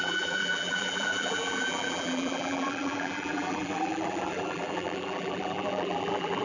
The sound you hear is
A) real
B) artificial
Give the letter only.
B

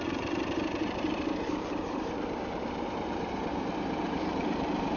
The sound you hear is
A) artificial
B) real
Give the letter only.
A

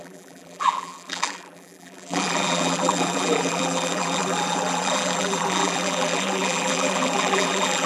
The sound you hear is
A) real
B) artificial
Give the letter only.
B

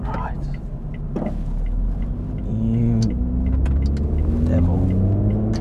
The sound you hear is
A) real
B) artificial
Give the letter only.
A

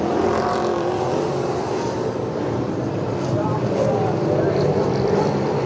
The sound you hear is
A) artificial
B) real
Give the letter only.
A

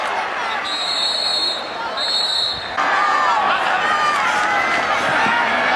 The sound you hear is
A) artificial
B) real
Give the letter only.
B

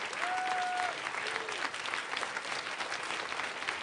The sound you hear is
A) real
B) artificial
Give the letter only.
A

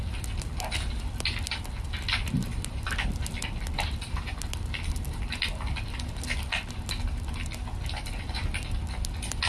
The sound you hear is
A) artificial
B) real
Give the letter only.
B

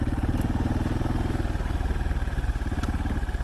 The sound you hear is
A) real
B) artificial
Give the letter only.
B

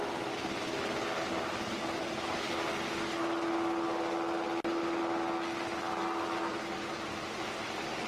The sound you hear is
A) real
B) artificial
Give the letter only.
A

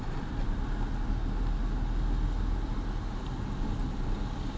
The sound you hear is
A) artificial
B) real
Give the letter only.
B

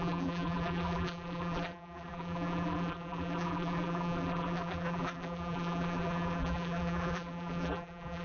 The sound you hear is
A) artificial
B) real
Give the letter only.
A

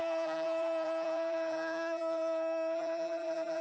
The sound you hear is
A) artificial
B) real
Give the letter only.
A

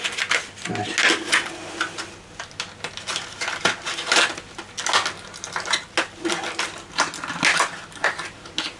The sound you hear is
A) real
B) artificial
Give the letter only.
A